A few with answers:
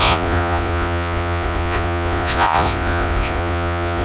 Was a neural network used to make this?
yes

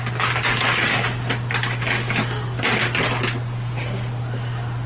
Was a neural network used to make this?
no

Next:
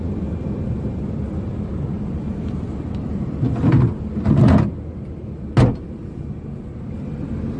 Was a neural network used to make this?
no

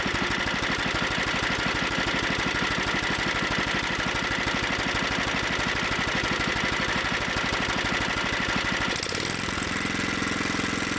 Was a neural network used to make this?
no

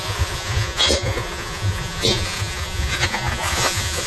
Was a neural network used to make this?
yes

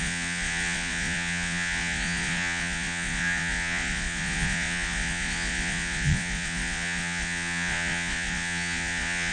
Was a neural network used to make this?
yes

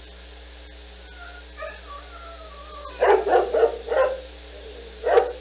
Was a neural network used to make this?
no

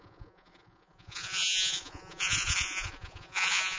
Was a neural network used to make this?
yes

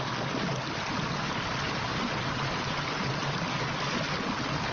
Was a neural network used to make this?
no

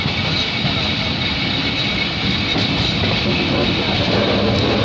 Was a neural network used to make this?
no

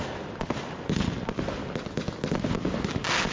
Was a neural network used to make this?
no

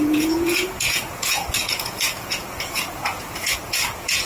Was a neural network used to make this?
yes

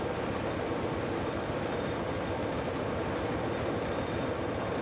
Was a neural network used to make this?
no